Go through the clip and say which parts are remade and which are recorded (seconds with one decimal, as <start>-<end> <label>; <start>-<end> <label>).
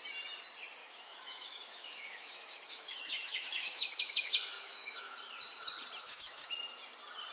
0.0-0.8 recorded; 0.8-5.2 remade; 5.2-6.0 recorded; 6.0-6.5 remade; 6.5-7.3 recorded